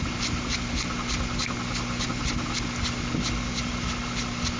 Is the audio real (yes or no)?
yes